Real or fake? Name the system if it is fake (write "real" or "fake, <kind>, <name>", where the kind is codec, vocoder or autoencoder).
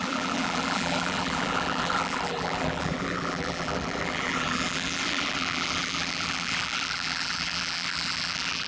fake, vocoder, BigVGAN v2